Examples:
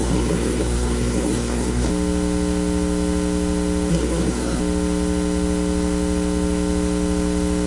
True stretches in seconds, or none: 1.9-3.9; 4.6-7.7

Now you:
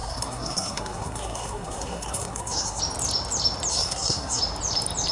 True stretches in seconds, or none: 2.8-3.7; 4.4-5.1

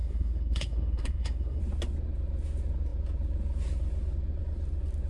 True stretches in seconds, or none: 1.6-5.1